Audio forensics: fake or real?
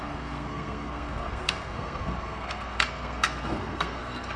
fake